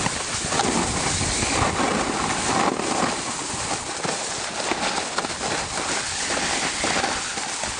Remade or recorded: recorded